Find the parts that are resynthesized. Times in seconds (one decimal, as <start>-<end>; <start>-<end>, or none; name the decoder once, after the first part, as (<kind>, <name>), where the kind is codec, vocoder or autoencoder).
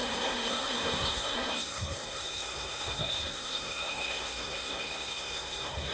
0.0-5.9 (codec, SNAC)